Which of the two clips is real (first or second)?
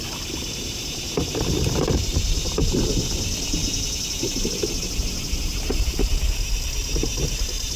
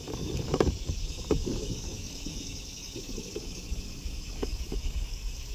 first